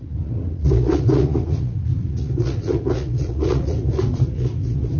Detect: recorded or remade remade